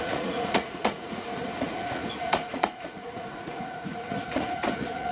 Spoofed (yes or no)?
yes